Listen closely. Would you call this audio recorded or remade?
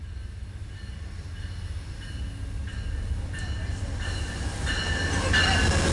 recorded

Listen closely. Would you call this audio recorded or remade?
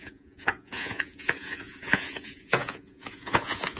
remade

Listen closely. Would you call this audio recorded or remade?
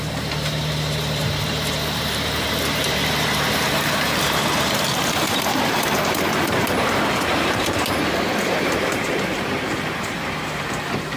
remade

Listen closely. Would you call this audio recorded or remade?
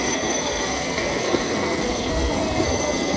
remade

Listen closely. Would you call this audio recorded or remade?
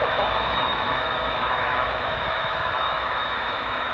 remade